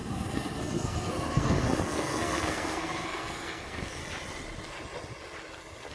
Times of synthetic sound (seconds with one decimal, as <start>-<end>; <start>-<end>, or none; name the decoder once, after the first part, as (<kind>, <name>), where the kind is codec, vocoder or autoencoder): 0.0-4.0 (codec, SNAC)